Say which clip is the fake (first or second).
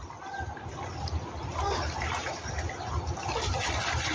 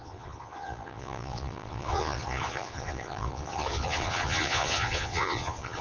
second